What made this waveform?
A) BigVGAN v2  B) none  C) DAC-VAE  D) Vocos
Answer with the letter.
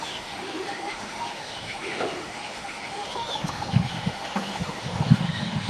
C